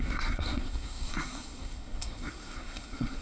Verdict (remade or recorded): remade